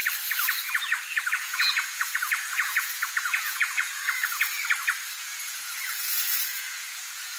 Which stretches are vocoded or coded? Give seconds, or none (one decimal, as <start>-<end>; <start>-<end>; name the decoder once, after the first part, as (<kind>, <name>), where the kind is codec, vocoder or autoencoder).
1.3-4.5 (vocoder, Vocos); 5.2-7.4